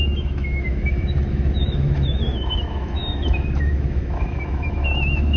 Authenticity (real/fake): fake